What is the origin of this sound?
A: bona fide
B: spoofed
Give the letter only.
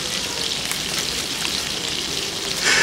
B